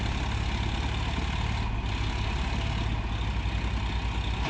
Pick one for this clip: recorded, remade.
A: recorded